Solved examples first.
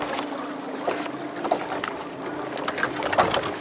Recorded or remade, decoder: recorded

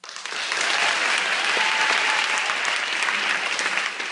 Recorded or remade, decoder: recorded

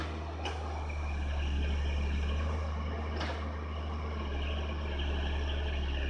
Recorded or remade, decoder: recorded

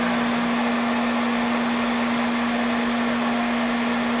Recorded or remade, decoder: recorded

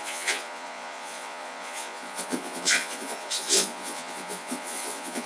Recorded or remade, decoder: remade, vocoder, Vocos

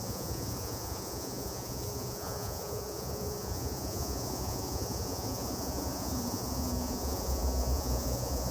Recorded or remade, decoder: remade, vocoder, Vocos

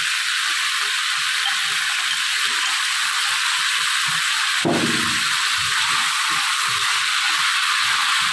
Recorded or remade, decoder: recorded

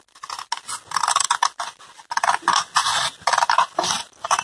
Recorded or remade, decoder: recorded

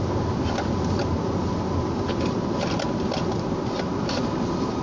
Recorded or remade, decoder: recorded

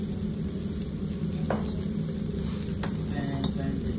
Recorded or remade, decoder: recorded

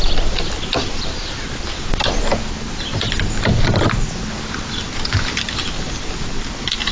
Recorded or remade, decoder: recorded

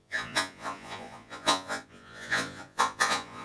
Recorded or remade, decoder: remade, vocoder, Vocos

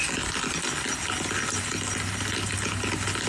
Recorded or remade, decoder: recorded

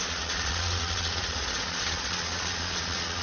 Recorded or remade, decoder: remade, vocoder, Vocos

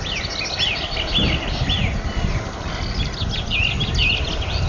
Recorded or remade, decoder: recorded